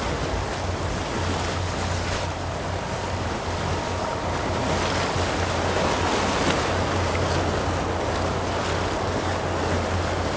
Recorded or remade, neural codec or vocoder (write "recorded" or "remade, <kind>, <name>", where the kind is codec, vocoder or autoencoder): recorded